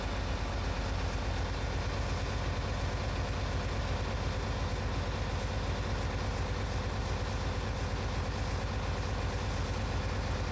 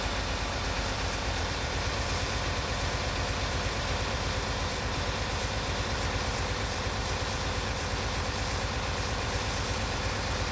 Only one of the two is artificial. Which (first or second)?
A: second